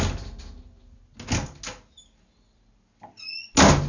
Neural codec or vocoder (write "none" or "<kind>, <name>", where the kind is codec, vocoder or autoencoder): none